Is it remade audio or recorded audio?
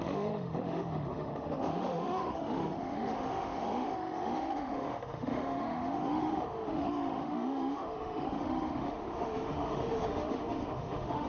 remade